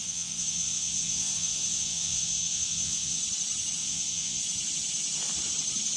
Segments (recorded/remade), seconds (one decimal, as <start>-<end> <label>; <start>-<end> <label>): 0.0-3.2 remade; 3.2-3.8 recorded; 3.8-4.4 remade; 4.4-6.0 recorded